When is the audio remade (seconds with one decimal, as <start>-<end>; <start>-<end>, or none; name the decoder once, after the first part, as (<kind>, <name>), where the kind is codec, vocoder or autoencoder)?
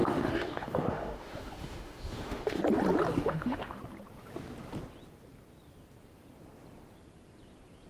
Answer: 0.0-2.6 (autoencoder, DAC-VAE); 3.2-3.8